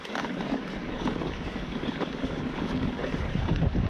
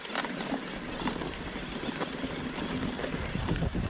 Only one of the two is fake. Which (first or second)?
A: first